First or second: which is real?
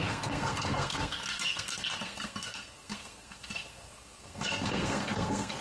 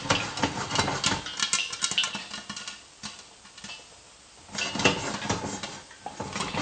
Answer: second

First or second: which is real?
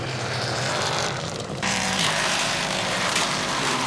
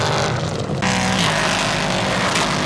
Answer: second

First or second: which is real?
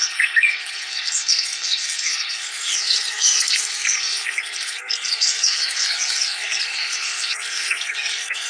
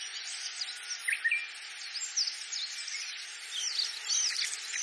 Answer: second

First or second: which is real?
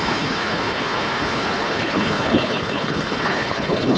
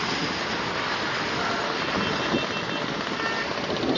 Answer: second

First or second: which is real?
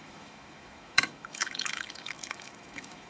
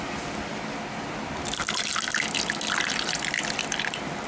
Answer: second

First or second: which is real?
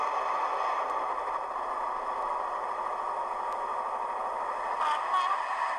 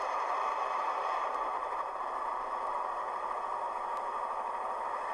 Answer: first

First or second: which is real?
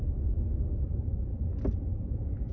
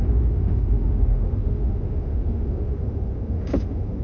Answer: first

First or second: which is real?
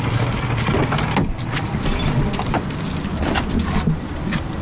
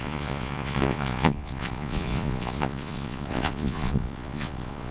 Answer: first